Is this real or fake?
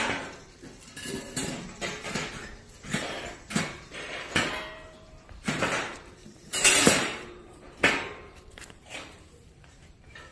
fake